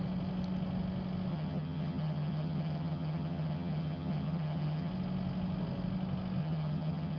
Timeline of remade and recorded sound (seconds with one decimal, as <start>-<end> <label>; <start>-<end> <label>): 0.0-1.3 recorded; 1.3-4.9 remade; 4.9-6.4 recorded; 6.4-7.2 remade